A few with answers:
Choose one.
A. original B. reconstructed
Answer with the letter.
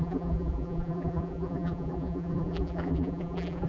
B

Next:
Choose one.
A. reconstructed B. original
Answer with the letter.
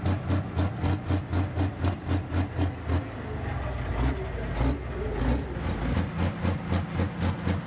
B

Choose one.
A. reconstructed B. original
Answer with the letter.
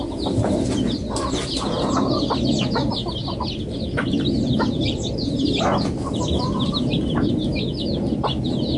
B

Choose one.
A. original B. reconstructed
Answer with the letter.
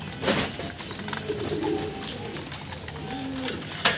A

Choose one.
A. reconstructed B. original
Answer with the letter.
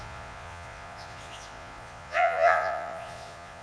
A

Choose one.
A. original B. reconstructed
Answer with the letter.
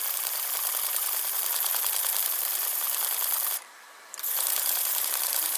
B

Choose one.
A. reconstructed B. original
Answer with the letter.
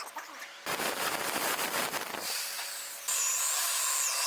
B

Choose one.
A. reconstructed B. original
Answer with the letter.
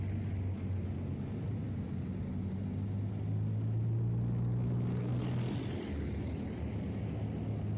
B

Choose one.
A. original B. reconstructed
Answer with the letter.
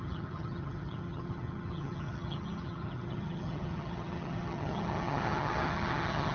B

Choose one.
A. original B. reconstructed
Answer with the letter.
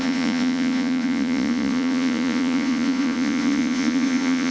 B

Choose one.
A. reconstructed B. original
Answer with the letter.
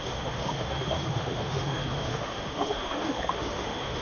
A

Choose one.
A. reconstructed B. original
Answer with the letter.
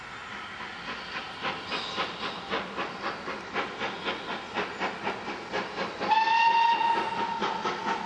B